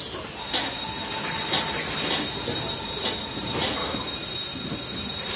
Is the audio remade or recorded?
recorded